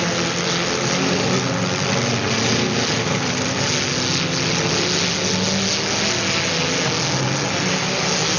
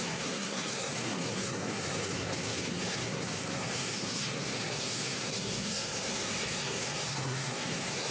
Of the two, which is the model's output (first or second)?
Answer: second